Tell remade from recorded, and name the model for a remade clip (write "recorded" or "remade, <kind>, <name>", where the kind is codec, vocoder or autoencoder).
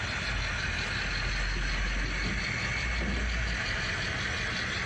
recorded